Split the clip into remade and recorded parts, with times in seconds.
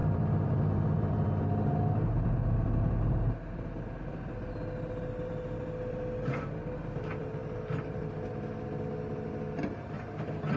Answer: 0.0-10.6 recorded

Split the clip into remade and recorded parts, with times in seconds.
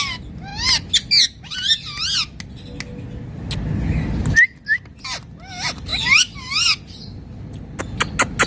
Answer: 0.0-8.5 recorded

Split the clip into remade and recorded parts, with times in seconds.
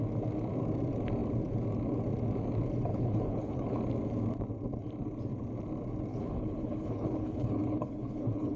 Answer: 0.0-2.9 recorded; 2.9-3.8 remade; 3.8-6.1 recorded; 6.1-8.6 remade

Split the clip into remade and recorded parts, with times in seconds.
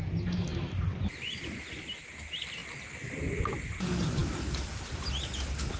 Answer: 0.0-0.5 recorded; 0.5-1.8 remade; 1.8-5.8 recorded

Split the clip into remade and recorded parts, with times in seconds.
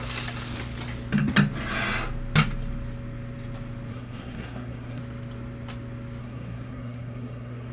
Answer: 0.0-3.9 recorded; 3.9-5.0 remade; 5.0-6.2 recorded; 6.2-7.7 remade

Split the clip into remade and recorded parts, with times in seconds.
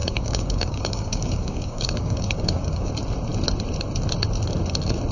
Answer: 0.0-2.9 remade; 2.9-5.1 recorded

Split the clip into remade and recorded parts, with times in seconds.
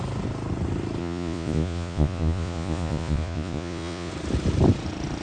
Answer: 0.0-1.0 recorded; 1.0-4.1 remade; 4.1-5.2 recorded